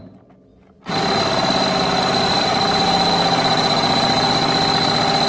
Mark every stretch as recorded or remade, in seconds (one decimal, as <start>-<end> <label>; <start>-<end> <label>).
0.0-0.5 recorded; 0.5-1.0 remade; 1.0-2.5 recorded; 2.5-4.3 remade; 4.3-5.3 recorded

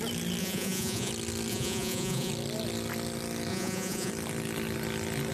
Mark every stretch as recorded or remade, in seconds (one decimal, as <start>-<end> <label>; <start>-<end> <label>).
0.0-0.4 recorded; 0.4-1.1 remade; 1.1-1.5 recorded; 1.5-2.3 remade; 2.3-3.5 recorded; 3.5-4.1 remade; 4.1-5.3 recorded

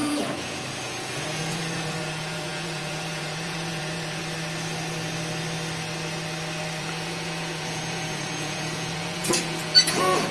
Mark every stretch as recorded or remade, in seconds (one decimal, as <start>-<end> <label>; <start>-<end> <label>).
0.0-4.2 remade; 4.2-6.8 recorded; 6.8-10.3 remade

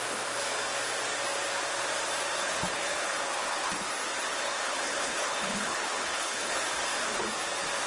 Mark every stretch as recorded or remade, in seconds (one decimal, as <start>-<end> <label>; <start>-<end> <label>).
0.0-2.4 recorded; 2.4-3.7 remade; 3.7-4.6 recorded; 4.6-6.5 remade; 6.5-7.9 recorded

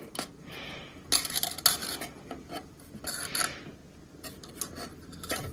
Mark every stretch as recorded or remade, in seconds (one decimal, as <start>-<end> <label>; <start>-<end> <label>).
0.0-5.5 recorded

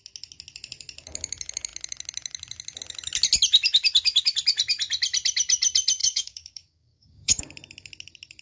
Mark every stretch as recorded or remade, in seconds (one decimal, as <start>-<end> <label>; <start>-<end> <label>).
0.0-6.0 recorded; 6.0-7.4 remade; 7.4-8.4 recorded

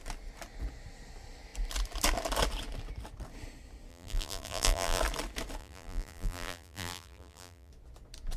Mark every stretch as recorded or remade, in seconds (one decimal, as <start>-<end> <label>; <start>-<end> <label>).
0.0-3.9 recorded; 3.9-5.0 remade; 5.0-5.6 recorded; 5.6-7.7 remade; 7.7-8.4 recorded